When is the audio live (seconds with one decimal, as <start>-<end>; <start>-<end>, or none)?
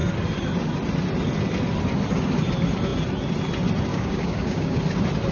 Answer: 0.0-3.9; 4.8-5.3